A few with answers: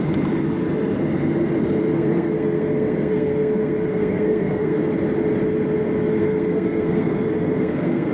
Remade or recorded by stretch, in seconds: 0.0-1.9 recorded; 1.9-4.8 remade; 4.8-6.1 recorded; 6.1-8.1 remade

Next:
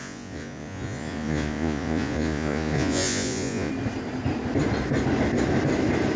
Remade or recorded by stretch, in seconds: 0.0-3.7 remade; 3.7-6.2 recorded

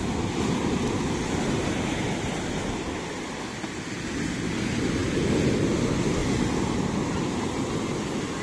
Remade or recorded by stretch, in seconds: 0.0-8.4 recorded

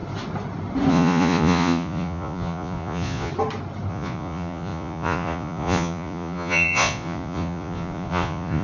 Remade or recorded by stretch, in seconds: 0.0-0.9 recorded; 0.9-3.3 remade; 3.3-3.9 recorded; 3.9-8.6 remade

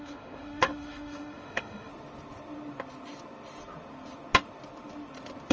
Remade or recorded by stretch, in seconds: 0.0-1.9 remade; 1.9-5.5 recorded